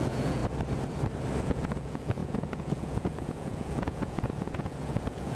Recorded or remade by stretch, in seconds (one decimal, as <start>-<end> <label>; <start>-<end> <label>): 0.0-0.4 remade; 0.4-1.4 recorded; 1.4-5.3 remade